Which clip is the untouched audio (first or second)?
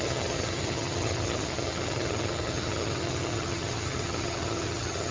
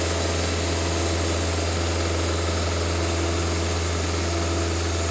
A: second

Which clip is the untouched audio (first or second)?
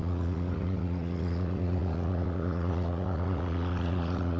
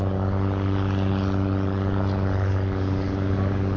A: second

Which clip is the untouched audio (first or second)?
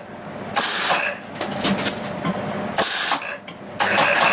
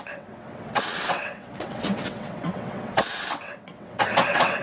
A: first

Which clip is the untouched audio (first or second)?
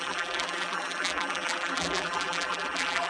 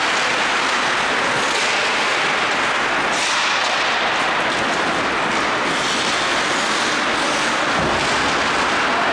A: second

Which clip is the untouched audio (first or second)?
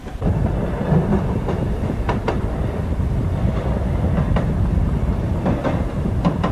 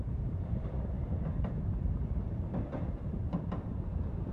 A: first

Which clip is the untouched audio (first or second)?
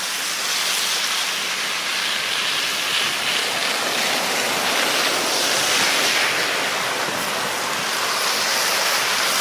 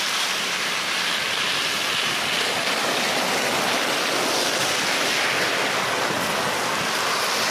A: first